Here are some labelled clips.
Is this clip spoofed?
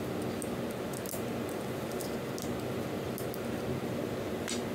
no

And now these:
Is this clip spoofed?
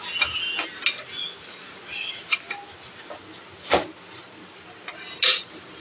no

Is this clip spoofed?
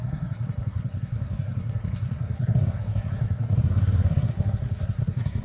yes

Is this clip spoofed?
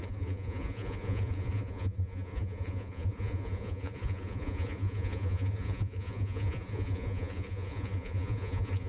yes